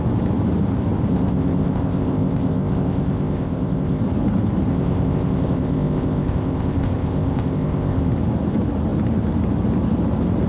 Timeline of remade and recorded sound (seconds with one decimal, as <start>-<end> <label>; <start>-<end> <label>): 0.0-1.1 recorded; 1.1-4.0 remade; 4.0-4.7 recorded; 4.7-8.1 remade; 8.1-10.5 recorded